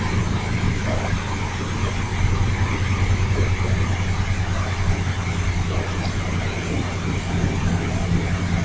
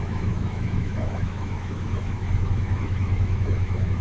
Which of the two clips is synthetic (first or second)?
second